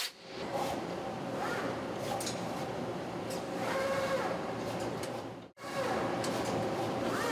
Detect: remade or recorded remade